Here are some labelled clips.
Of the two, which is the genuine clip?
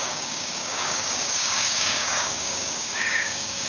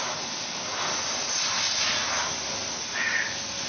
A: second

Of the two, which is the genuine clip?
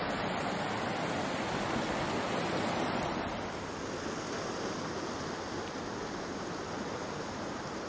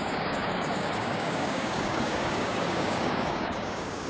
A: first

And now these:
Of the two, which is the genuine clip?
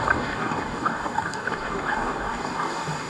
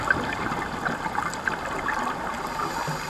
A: second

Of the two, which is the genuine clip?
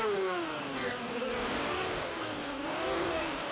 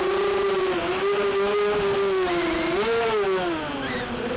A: second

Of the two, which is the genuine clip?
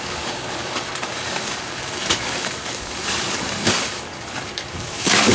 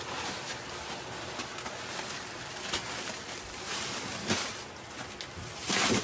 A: second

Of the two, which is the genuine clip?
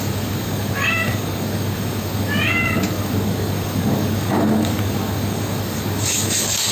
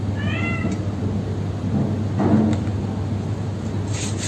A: second